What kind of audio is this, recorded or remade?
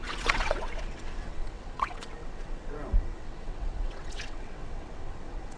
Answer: remade